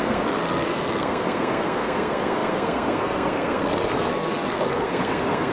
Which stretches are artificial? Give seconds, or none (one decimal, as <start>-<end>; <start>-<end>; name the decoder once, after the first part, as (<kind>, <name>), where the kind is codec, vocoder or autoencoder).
0.0-5.5 (codec, SNAC)